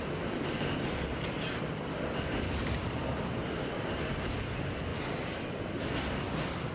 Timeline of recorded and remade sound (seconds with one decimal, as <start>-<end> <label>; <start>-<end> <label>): 0.0-6.7 recorded